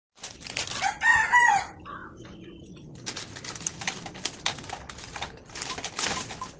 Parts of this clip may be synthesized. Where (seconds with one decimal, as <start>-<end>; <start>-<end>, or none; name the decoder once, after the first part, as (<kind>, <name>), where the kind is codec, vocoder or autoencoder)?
none